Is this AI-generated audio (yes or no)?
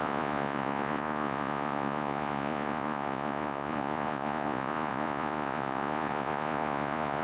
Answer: yes